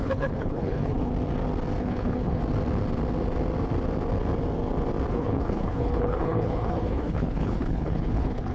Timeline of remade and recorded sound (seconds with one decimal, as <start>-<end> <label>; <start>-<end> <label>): 0.0-1.1 remade; 1.1-1.8 recorded; 1.8-2.4 remade; 2.4-5.1 recorded; 5.1-8.5 remade